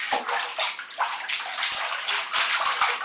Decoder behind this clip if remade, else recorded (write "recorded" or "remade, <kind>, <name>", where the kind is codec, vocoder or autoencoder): recorded